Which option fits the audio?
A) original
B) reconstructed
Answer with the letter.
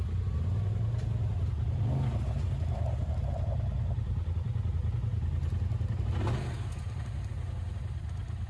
A